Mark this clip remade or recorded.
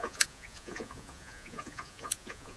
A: remade